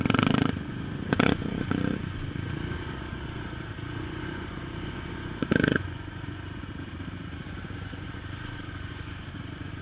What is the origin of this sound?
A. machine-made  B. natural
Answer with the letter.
A